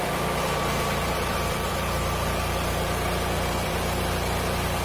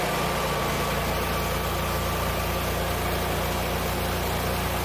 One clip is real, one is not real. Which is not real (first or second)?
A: first